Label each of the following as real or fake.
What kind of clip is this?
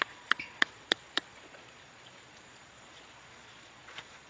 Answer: fake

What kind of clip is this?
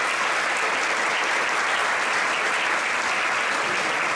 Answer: real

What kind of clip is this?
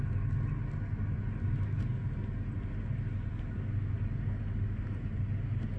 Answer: real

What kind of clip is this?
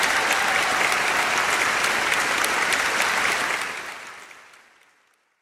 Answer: real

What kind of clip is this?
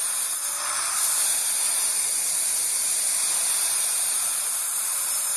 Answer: fake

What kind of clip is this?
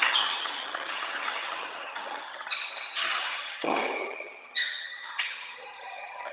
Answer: fake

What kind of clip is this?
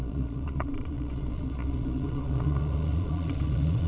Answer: fake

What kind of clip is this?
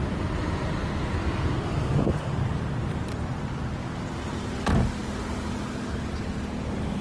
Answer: real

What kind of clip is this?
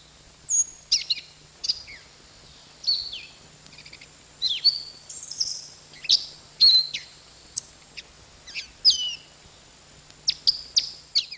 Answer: real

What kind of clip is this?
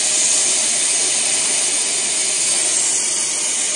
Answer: real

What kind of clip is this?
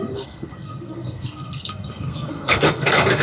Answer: fake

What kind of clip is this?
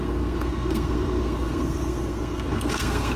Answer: fake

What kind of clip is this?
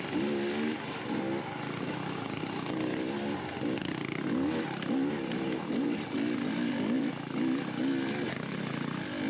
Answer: real